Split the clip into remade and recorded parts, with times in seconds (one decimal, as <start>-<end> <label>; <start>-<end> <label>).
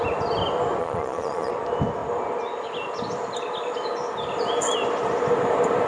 0.0-0.8 recorded; 0.8-1.5 remade; 1.5-5.9 recorded